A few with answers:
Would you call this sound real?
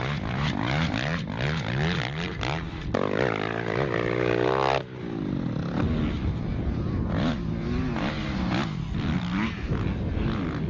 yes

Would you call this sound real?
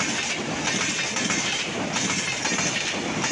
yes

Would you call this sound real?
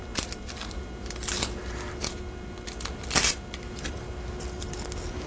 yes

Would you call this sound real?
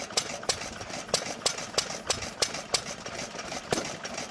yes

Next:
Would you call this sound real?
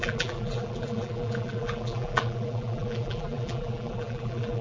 no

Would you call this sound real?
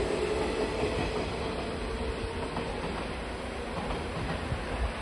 yes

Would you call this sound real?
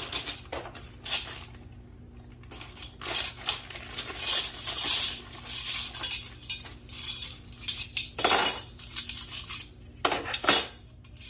yes